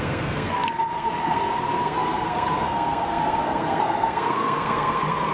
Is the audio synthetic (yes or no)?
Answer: yes